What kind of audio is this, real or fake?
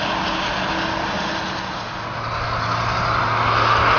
real